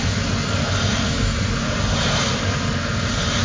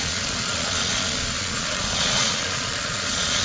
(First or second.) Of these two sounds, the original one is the first